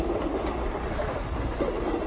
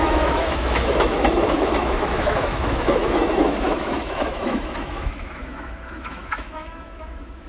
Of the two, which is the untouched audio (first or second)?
first